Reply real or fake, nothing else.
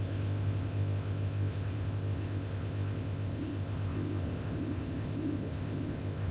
fake